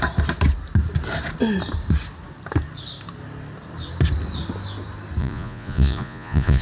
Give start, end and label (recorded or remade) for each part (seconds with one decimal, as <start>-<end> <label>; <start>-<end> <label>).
0.0-5.2 recorded; 5.2-6.6 remade